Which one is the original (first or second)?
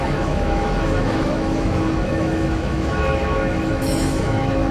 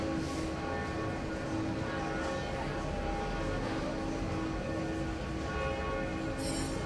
second